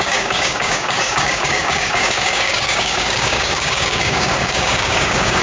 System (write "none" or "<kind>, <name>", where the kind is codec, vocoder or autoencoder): codec, DAC